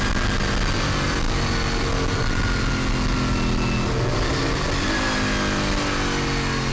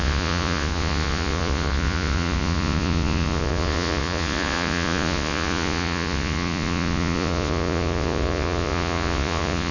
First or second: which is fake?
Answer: second